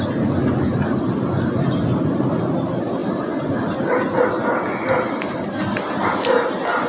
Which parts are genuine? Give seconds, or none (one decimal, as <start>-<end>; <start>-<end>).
0.0-0.7; 2.4-6.9

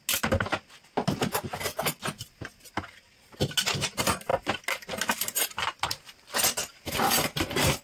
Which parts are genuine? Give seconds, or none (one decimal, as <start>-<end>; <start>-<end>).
0.0-7.8

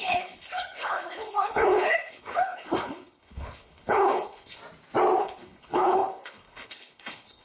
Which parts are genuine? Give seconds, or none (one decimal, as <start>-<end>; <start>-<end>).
4.6-5.2

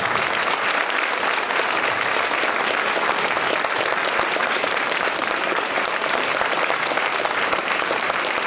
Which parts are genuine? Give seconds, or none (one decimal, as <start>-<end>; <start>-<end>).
0.0-4.4; 6.4-7.6